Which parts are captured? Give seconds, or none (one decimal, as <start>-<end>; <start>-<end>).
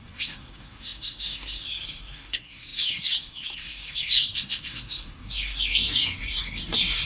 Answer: none